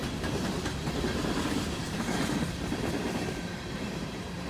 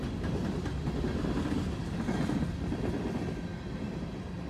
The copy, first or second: first